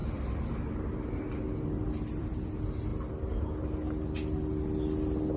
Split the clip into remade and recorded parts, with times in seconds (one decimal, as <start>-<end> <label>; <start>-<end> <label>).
0.0-2.2 recorded; 2.2-2.9 remade; 2.9-5.4 recorded